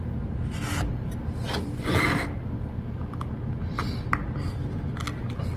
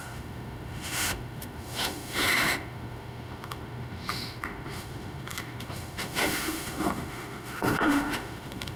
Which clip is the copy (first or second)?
second